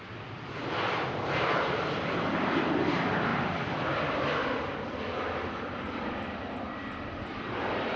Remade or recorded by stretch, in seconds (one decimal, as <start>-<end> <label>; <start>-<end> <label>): 0.0-8.0 remade